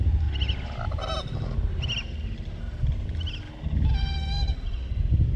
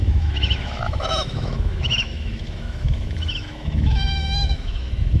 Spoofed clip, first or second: second